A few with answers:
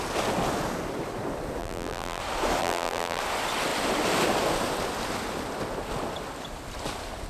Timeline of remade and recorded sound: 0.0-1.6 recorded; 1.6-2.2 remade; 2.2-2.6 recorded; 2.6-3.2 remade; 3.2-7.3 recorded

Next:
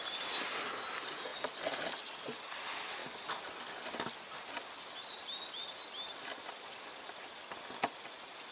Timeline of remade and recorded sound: 0.0-8.5 recorded

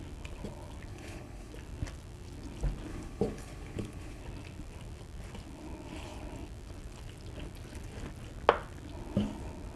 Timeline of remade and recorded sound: 0.0-0.9 recorded; 0.9-1.5 remade; 1.5-2.9 recorded; 2.9-4.2 remade; 4.2-9.8 recorded